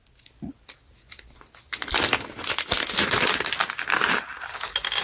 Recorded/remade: recorded